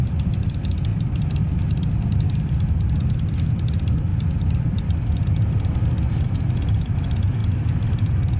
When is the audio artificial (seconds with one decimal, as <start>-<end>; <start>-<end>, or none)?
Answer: 0.9-2.2; 4.1-6.2; 7.4-8.4